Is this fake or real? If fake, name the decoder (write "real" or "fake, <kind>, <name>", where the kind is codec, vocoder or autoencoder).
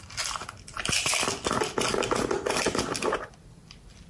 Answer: real